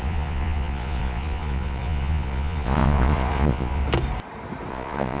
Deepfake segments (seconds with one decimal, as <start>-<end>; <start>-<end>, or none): 0.0-3.8; 4.7-5.2